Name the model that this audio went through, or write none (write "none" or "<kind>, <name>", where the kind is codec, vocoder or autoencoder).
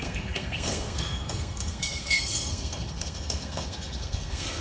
codec, SNAC